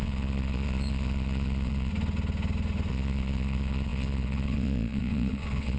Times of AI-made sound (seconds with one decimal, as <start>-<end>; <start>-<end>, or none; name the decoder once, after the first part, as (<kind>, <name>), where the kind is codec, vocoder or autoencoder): 0.0-1.9 (vocoder, WaveNeXt); 2.9-5.8